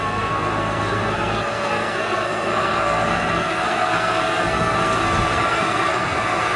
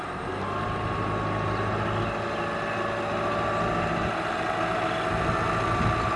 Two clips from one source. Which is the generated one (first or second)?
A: first